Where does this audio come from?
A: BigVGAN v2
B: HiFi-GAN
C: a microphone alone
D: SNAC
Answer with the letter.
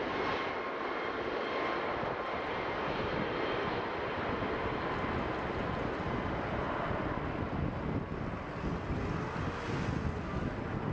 C